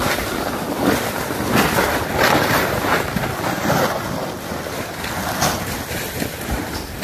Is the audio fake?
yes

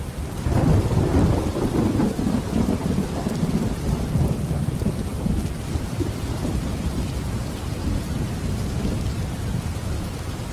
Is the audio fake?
yes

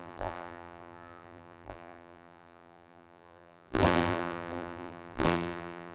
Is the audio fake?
yes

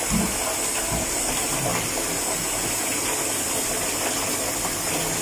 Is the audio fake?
no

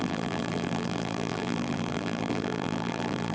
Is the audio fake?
yes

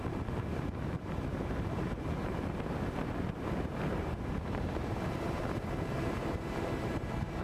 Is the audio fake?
yes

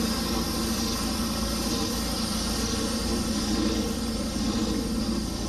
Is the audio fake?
no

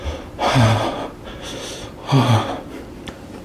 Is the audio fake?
no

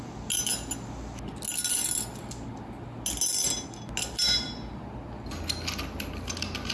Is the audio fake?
no